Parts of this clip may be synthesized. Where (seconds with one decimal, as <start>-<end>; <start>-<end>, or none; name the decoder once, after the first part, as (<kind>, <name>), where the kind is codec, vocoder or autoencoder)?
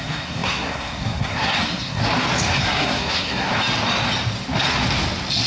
0.0-2.0 (codec, SNAC); 2.6-3.5